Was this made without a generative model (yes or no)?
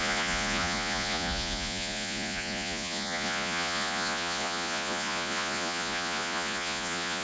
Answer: no